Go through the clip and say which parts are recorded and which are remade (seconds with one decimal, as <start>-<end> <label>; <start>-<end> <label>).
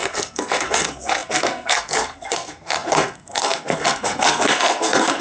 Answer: 0.0-5.2 remade